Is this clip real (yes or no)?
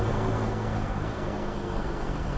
no